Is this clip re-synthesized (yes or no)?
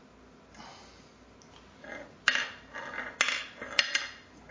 no